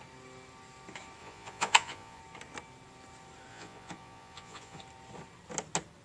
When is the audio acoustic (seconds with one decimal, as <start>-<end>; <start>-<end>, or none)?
0.0-1.2; 2.2-3.5; 4.8-6.0